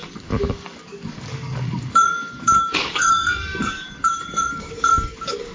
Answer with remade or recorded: remade